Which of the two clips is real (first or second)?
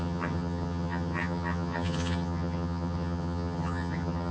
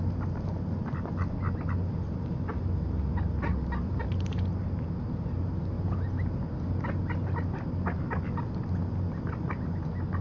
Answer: second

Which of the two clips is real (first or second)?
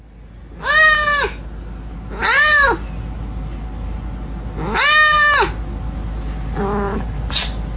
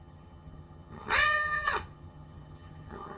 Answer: first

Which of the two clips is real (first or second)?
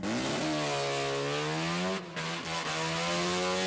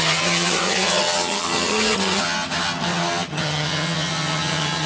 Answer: first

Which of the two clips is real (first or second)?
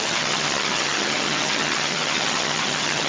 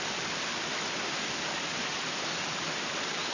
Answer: second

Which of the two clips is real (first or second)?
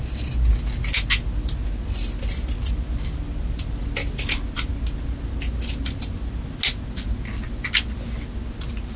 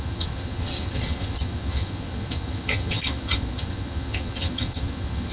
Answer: first